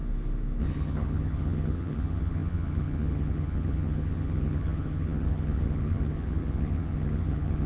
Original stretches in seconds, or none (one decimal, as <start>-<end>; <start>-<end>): 0.0-0.6